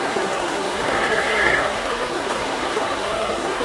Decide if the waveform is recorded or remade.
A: remade